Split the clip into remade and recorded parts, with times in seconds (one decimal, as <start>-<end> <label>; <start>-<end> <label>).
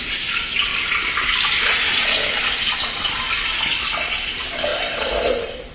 0.0-5.7 recorded